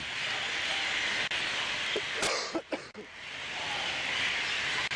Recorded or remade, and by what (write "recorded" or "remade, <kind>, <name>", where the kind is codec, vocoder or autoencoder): recorded